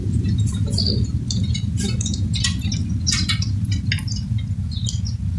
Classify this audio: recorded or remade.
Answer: recorded